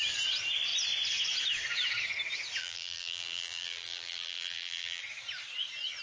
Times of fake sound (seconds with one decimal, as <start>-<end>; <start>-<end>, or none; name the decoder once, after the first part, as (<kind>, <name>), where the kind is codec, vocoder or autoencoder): 2.6-5.0 (vocoder, BigVGAN v2)